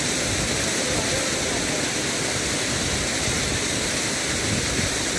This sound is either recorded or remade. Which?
recorded